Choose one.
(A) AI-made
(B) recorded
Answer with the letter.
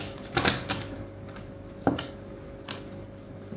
A